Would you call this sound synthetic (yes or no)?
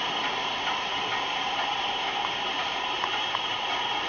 yes